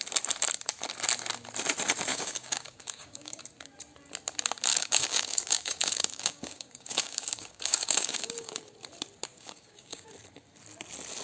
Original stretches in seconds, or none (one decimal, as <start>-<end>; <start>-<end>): 0.0-2.1; 3.4-4.7; 8.6-9.3; 10.1-11.2